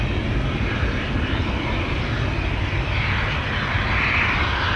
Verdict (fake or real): real